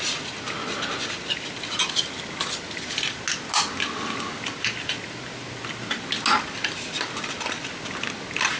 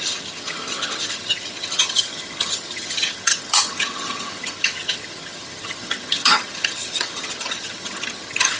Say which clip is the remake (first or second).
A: second